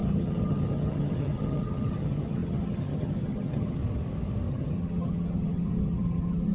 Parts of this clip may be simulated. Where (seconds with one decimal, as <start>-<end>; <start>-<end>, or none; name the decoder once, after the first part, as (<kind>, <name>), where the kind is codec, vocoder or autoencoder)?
0.0-3.8 (vocoder, HiFi-GAN); 4.5-6.5